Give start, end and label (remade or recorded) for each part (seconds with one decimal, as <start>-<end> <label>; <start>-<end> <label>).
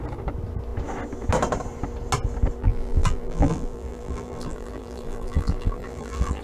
0.0-2.6 recorded; 2.6-6.4 remade